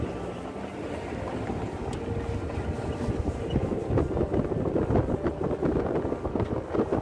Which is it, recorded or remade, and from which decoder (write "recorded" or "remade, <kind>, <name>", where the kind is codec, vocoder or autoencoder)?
recorded